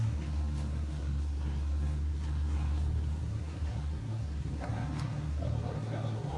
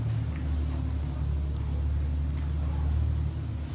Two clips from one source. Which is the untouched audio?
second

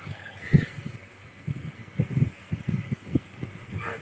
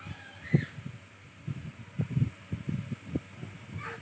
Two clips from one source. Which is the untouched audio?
second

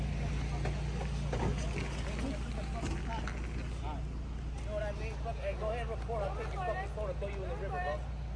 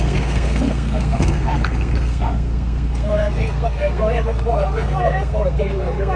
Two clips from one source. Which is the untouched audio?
first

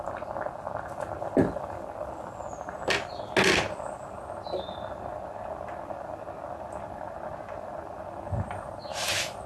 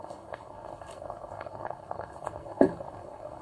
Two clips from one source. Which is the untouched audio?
first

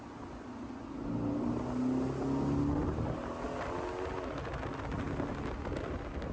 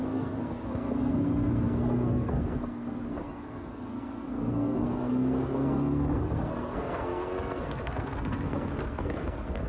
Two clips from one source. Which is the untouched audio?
first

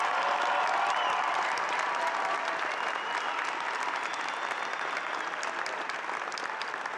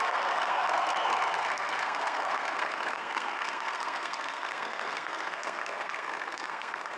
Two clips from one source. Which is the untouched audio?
first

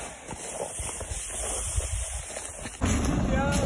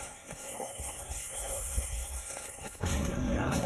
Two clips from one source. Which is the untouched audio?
first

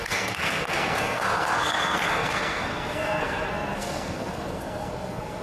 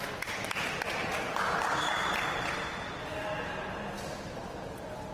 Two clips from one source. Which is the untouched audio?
second